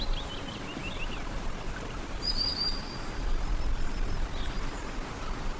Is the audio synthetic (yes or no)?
no